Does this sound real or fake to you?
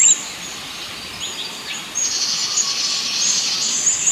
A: real